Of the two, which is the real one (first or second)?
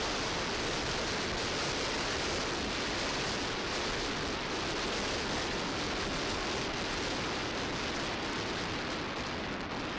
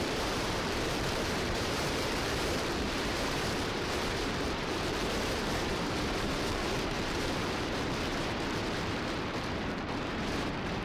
first